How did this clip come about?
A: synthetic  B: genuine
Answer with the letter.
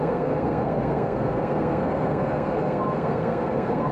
A